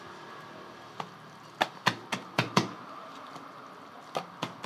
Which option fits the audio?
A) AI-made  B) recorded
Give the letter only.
B